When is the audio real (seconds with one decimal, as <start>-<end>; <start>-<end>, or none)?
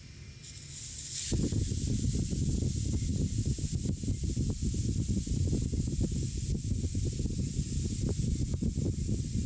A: 0.0-9.5